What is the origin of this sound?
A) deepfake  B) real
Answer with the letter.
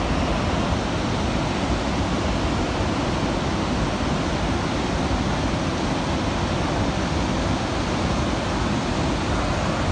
B